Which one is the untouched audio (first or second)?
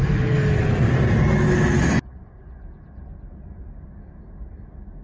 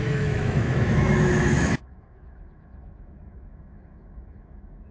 first